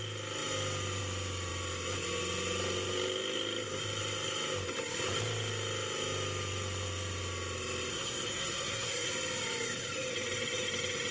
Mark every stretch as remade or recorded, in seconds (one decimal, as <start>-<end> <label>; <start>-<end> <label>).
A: 0.0-7.9 recorded; 7.9-9.1 remade; 9.1-11.1 recorded